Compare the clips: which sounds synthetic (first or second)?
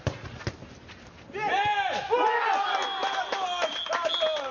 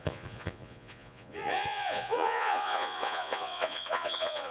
second